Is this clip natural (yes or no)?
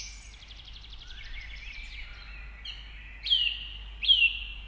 yes